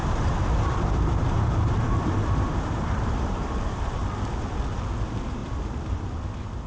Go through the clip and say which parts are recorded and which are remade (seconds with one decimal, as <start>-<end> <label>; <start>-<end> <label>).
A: 0.0-4.0 remade; 4.0-5.4 recorded; 5.4-6.1 remade; 6.1-6.7 recorded